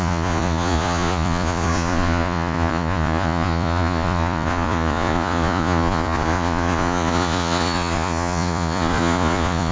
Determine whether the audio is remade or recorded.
remade